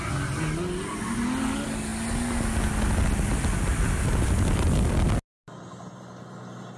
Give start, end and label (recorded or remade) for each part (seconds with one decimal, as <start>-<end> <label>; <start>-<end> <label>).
0.0-6.8 recorded